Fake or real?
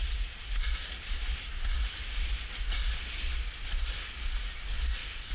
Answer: real